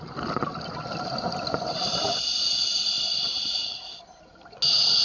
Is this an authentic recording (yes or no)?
yes